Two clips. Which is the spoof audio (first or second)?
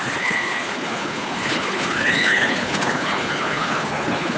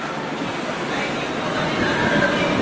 first